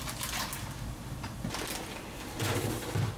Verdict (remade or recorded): recorded